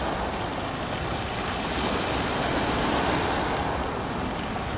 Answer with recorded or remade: recorded